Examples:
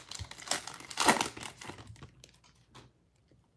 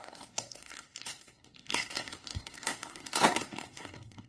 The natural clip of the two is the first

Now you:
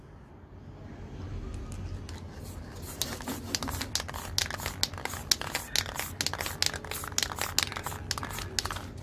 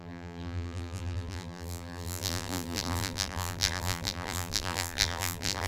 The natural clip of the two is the first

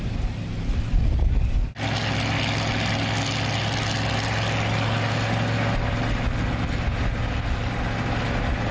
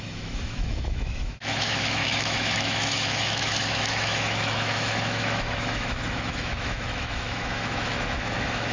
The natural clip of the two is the first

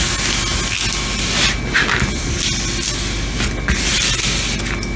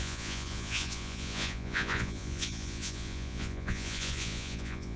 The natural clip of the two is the first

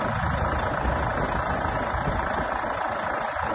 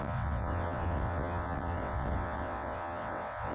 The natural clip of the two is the first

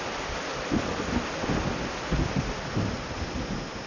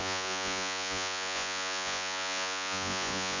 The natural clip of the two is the first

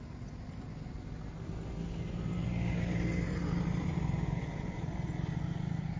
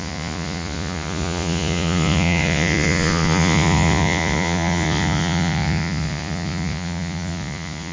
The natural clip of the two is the first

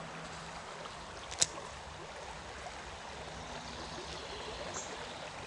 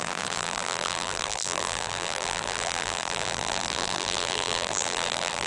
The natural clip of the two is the first